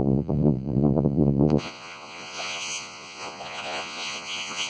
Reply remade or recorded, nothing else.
remade